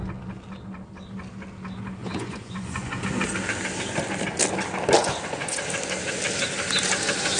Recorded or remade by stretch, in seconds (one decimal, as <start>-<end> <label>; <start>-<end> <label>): 0.0-2.0 recorded; 2.0-3.0 remade; 3.0-5.0 recorded; 5.0-5.6 remade; 5.6-7.4 recorded